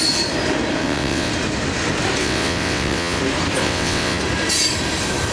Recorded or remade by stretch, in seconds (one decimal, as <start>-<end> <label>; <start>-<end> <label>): 0.0-0.8 recorded; 0.8-1.3 remade; 1.3-2.2 recorded; 2.2-3.2 remade; 3.2-3.6 recorded; 3.6-4.2 remade; 4.2-5.3 recorded

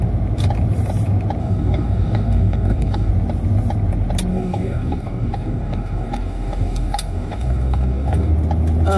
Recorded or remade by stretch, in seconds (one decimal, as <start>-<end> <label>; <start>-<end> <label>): 0.0-1.4 recorded; 1.4-3.1 remade; 3.1-4.3 recorded; 4.3-8.3 remade; 8.3-9.0 recorded